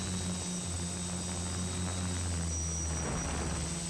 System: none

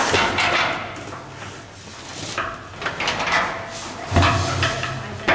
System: none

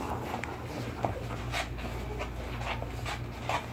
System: none